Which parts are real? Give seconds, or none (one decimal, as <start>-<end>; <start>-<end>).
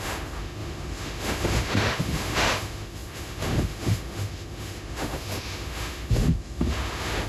none